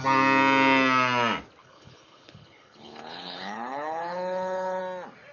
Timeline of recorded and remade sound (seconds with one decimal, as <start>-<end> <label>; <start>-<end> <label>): 0.0-1.6 recorded; 1.6-4.8 remade; 4.8-5.3 recorded